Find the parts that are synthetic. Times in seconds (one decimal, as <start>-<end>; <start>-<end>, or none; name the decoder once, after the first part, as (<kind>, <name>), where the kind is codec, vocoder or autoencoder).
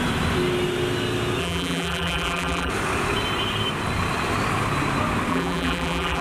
1.4-2.7 (vocoder, BigVGAN v2); 5.3-6.2